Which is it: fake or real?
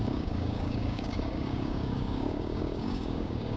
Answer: fake